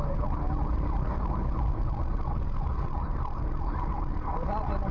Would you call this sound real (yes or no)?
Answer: yes